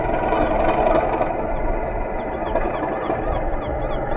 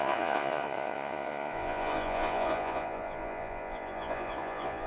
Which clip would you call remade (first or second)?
second